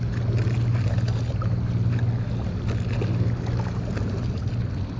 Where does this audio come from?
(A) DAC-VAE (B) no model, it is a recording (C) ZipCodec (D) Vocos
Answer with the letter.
B